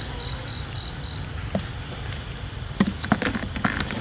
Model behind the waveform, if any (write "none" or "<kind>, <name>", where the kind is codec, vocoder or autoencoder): none